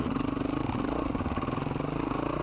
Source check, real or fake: real